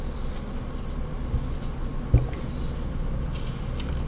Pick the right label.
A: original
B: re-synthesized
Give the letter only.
A